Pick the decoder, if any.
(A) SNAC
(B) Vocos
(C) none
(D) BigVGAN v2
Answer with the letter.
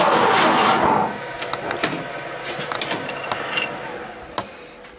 C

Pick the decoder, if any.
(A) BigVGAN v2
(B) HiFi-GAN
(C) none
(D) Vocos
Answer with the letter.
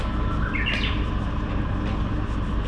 C